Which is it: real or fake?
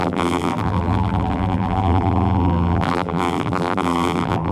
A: fake